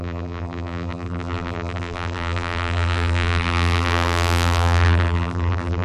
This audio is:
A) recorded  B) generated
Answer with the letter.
B